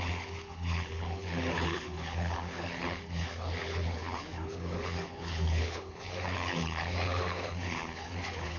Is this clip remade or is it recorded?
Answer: remade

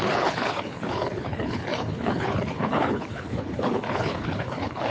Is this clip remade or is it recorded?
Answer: remade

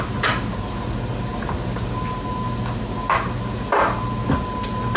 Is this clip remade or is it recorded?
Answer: recorded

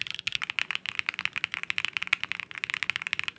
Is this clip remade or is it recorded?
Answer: recorded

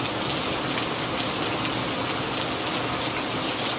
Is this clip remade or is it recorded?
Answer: recorded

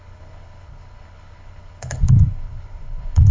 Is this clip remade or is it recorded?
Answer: remade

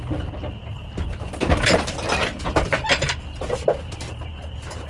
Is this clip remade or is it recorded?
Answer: recorded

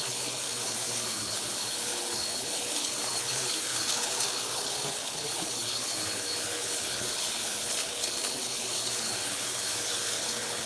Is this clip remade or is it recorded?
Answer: remade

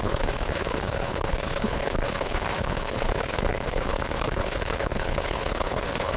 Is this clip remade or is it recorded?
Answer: remade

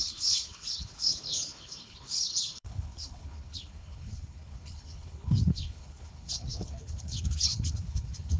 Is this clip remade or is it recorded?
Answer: remade